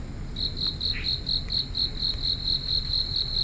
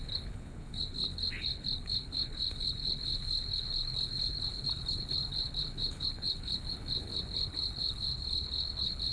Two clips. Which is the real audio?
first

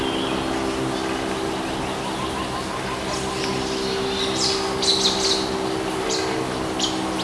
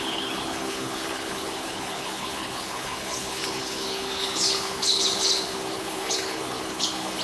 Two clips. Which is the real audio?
first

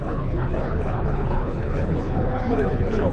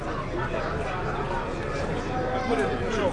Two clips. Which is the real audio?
second